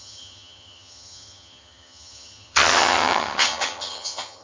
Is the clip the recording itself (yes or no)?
no